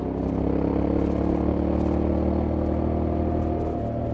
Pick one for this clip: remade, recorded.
recorded